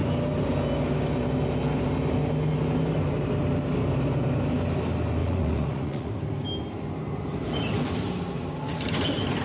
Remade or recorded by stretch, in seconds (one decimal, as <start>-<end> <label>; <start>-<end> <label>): 0.0-5.2 recorded; 5.2-6.1 remade; 6.1-9.4 recorded